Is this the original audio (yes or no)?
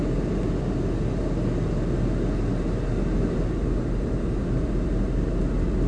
yes